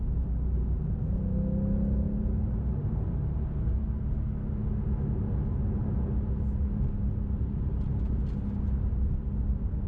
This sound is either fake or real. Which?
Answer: real